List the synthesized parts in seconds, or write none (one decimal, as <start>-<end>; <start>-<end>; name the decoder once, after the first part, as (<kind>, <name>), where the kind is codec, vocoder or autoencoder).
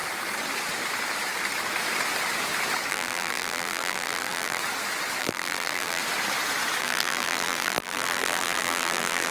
2.9-4.6 (vocoder, BigVGAN v2); 5.2-6.0; 6.8-9.3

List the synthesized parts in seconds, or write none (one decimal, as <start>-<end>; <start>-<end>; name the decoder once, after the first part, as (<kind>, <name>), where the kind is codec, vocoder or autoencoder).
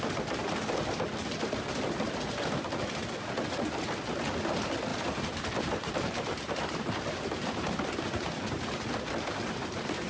4.9-6.6 (vocoder, BigVGAN v2)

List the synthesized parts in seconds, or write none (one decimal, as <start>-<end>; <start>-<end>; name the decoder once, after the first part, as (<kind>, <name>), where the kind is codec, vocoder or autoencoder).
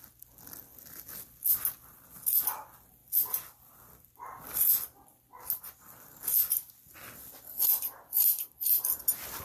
none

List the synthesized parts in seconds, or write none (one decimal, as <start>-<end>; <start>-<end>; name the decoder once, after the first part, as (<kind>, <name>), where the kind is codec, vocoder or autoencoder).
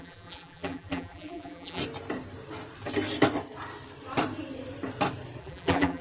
0.0-1.8 (vocoder, BigVGAN v2); 5.4-6.0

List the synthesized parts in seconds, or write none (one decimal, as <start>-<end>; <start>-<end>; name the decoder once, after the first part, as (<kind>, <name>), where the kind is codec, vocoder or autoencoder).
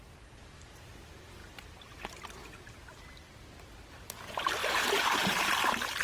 4.6-5.2 (vocoder, BigVGAN v2)